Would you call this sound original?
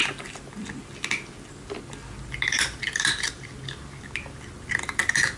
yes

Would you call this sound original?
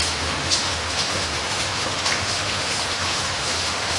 no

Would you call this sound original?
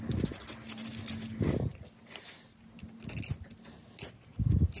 yes